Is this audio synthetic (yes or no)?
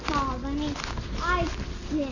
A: no